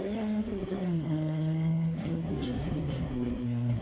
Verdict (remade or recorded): remade